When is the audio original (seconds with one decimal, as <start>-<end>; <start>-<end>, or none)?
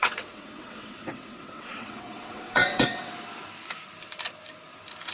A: 3.1-5.1